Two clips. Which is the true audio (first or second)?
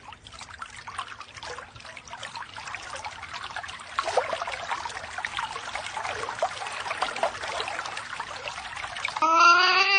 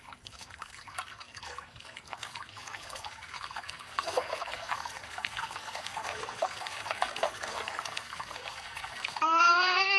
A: first